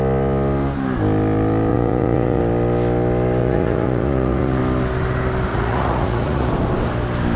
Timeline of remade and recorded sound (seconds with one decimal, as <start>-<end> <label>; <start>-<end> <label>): 0.0-1.7 recorded; 1.7-2.4 remade; 2.4-3.4 recorded; 3.4-4.6 remade; 4.6-5.5 recorded; 5.5-6.5 remade; 6.5-7.4 recorded